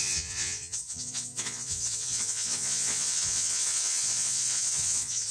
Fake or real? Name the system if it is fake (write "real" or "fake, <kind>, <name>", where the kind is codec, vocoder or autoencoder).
fake, vocoder, Vocos